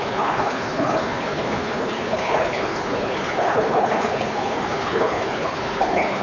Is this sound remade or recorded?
remade